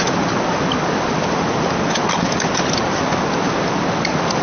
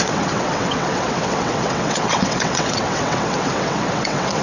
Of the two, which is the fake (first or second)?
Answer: second